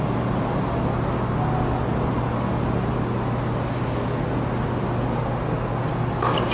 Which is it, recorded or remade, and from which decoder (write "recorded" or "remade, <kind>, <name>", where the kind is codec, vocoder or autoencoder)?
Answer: recorded